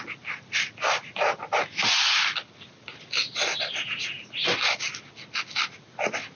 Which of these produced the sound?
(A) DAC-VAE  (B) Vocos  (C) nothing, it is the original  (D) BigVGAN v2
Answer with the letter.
C